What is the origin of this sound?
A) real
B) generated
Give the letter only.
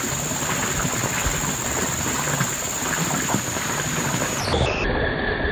A